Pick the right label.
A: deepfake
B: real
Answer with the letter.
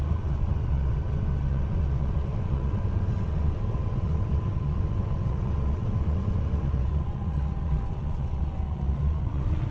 A